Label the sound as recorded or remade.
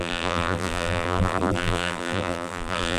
remade